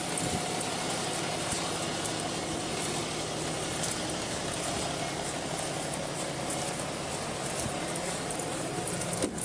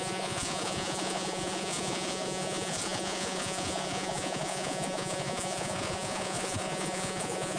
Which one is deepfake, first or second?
second